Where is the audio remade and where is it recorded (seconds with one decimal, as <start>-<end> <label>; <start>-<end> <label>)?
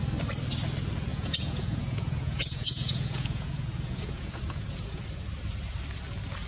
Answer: 0.0-1.1 recorded; 1.1-5.0 remade; 5.0-6.5 recorded